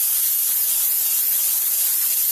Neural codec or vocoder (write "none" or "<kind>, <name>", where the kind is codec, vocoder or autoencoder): none